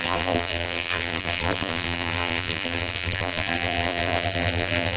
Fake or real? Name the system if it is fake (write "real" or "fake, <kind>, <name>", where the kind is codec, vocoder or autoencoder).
fake, vocoder, BigVGAN v2